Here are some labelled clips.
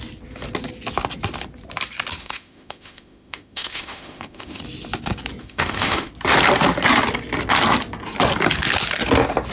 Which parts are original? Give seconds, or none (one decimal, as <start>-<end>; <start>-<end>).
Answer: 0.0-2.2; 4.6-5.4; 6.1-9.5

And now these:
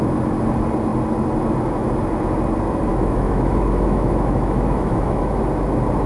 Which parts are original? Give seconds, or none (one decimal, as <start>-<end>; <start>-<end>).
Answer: 0.0-2.9; 5.4-6.1

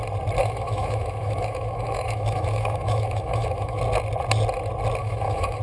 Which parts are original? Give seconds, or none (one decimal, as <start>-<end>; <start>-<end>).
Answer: 0.0-0.4; 3.8-5.0

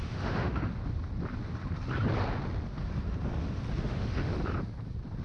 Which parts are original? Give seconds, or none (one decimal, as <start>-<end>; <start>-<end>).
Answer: 0.7-3.8; 4.3-5.2

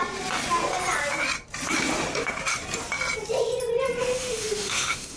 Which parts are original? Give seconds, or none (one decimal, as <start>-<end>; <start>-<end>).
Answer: 0.0-4.0